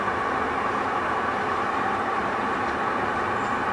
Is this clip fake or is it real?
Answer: fake